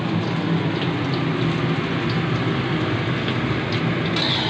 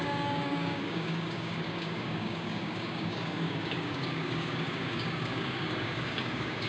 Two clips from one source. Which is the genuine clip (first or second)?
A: first